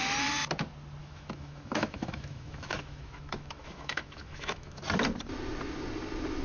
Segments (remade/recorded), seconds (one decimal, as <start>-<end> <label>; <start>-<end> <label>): 0.0-1.0 recorded; 1.0-4.8 remade; 4.8-6.4 recorded